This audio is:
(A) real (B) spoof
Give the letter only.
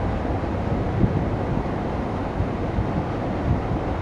A